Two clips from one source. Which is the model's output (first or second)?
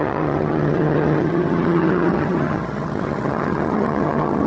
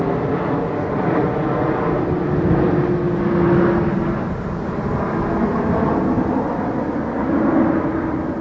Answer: first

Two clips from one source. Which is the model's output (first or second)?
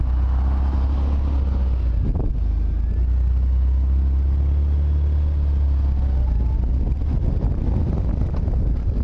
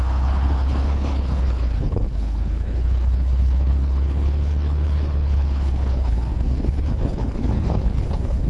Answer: second